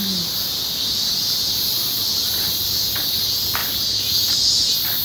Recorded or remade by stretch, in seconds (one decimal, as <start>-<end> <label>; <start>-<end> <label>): 0.0-0.5 recorded; 0.5-2.7 remade; 2.7-5.0 recorded

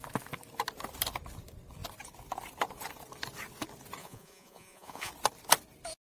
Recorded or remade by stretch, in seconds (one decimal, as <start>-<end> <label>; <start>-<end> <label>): 0.0-4.0 recorded; 4.0-5.1 remade; 5.1-6.2 recorded

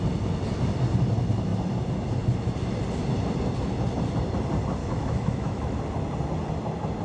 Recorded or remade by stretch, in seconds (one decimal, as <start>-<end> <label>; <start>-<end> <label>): 0.0-4.8 recorded; 4.8-5.8 remade; 5.8-7.0 recorded

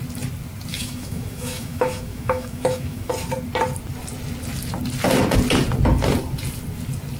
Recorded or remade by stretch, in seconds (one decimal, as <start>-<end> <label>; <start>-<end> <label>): 0.0-0.7 recorded; 0.7-3.1 remade; 3.1-7.2 recorded

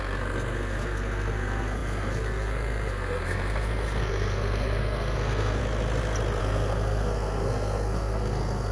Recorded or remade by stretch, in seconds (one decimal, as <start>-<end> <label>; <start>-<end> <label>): 0.0-5.6 remade; 5.6-6.4 recorded; 6.4-8.7 remade

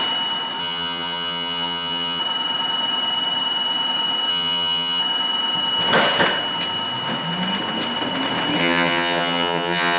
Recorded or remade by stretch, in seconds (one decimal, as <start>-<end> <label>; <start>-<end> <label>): 0.0-0.6 recorded; 0.6-2.2 remade; 2.2-4.3 recorded; 4.3-5.0 remade; 5.0-8.6 recorded; 8.6-10.0 remade